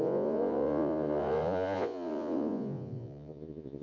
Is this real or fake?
fake